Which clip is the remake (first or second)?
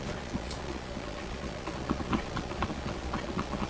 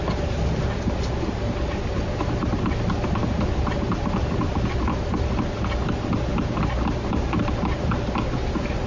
first